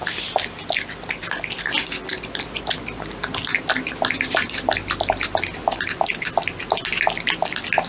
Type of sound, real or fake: real